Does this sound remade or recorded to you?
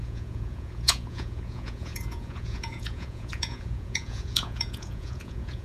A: remade